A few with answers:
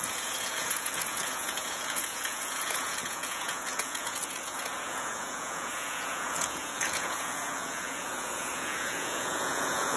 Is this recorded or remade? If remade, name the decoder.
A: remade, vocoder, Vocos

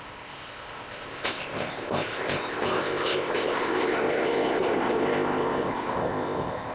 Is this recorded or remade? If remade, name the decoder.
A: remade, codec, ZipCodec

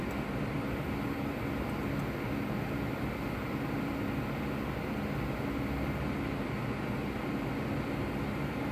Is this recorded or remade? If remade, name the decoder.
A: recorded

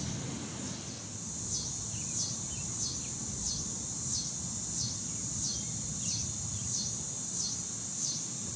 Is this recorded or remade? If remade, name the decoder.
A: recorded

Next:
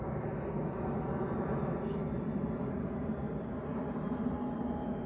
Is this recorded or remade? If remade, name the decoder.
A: recorded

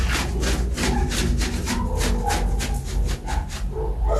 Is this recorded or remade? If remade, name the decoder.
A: recorded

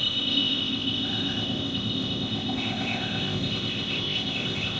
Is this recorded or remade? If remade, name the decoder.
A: remade, codec, ZipCodec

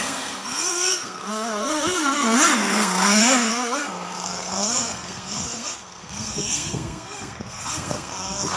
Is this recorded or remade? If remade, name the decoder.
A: remade, codec, SNAC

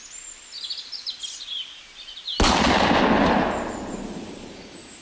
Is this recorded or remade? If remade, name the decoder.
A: recorded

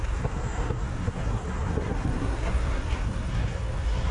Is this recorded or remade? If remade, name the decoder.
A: remade, codec, SNAC